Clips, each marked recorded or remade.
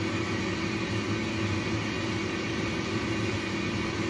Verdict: recorded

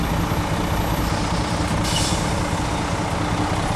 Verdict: recorded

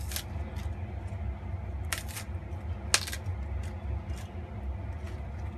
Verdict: recorded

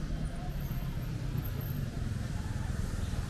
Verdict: remade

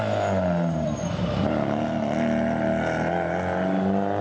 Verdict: recorded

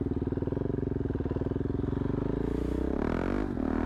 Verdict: recorded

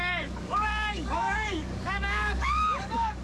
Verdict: remade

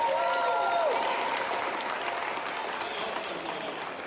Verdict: recorded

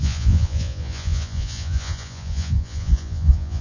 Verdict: remade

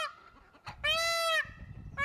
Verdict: recorded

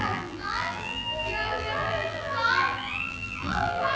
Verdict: remade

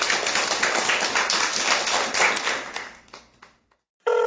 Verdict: recorded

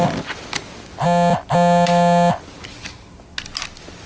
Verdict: recorded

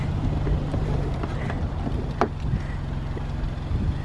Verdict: recorded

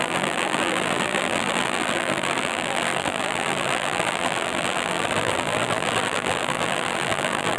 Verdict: remade